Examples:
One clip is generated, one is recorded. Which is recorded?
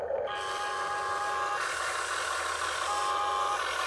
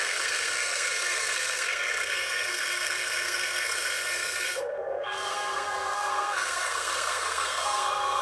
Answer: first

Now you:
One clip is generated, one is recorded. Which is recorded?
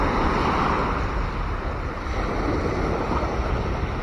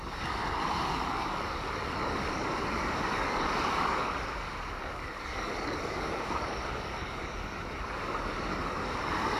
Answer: first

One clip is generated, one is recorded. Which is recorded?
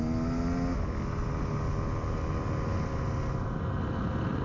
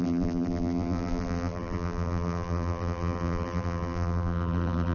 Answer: first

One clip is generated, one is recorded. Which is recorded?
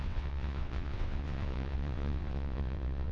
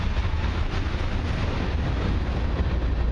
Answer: second